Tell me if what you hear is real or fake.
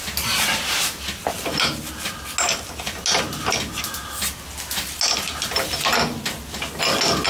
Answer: real